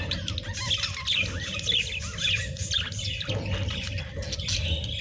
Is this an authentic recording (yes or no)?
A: yes